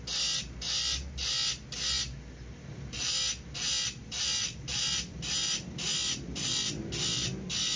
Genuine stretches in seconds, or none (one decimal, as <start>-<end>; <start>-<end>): 0.0-4.0; 7.3-7.8

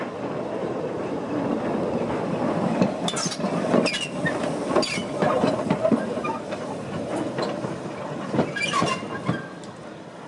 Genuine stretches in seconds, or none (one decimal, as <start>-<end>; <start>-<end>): 0.0-0.6; 1.4-5.0; 9.0-10.3

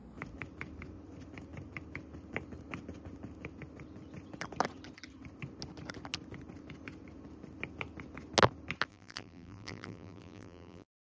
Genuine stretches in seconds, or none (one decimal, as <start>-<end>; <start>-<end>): 0.0-8.9

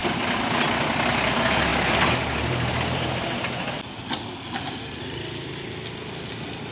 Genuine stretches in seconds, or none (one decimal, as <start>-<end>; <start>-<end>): 0.0-6.7